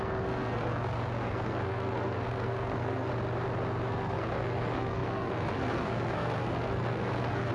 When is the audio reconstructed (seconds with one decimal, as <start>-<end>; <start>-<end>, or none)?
0.0-3.1; 3.9-7.5